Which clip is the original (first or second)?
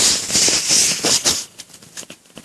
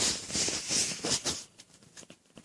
first